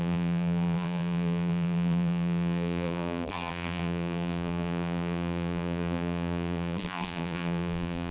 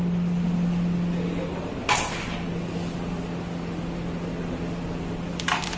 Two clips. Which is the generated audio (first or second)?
first